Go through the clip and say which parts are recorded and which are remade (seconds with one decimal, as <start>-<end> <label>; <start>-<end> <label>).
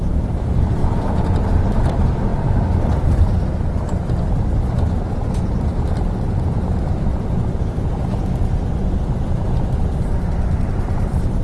0.0-0.8 remade; 0.8-1.9 recorded; 1.9-11.4 remade